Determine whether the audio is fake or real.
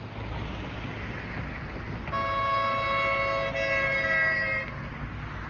real